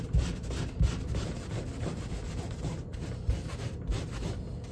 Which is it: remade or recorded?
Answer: recorded